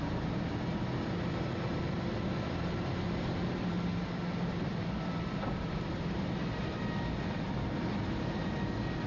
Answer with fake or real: real